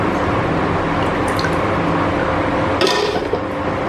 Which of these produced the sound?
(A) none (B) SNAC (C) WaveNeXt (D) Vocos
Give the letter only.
A